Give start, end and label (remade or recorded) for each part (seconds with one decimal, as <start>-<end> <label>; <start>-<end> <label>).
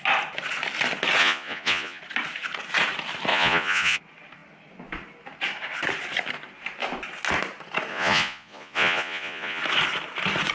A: 0.0-1.2 recorded; 1.2-2.0 remade; 2.0-3.3 recorded; 3.3-4.0 remade; 4.0-7.9 recorded; 7.9-9.6 remade; 9.6-10.5 recorded